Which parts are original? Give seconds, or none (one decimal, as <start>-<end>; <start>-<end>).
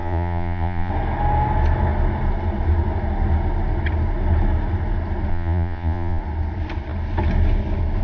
0.9-5.3; 6.2-8.0